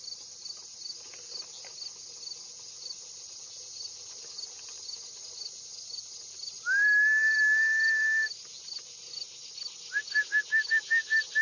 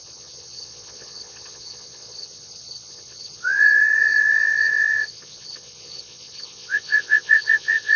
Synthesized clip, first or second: second